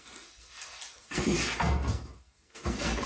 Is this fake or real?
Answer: fake